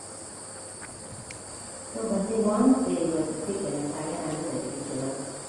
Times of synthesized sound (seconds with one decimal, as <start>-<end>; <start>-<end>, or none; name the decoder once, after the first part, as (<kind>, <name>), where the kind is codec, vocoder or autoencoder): none